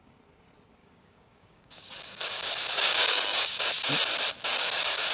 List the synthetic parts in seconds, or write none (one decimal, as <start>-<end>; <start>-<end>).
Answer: 0.8-3.9; 4.5-5.1